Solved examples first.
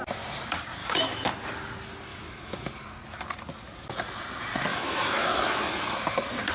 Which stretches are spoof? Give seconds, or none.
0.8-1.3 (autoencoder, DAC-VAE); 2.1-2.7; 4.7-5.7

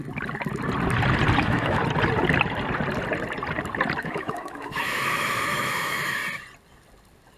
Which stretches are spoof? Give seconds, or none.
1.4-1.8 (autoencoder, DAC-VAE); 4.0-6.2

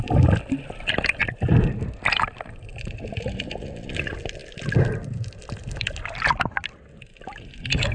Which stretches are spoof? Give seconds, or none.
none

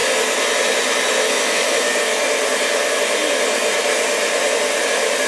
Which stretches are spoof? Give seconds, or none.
1.2-1.9 (autoencoder, DAC-VAE)

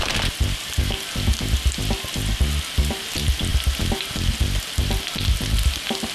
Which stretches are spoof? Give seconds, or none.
none

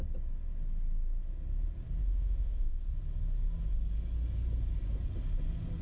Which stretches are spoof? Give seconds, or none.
2.0-2.8 (autoencoder, DAC-VAE)

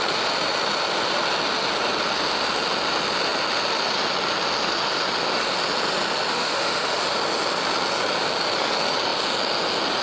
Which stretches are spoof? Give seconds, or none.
6.3-7.0 (autoencoder, DAC-VAE)

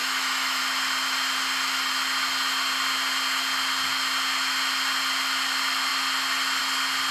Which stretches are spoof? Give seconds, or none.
0.0-0.6 (autoencoder, DAC-VAE)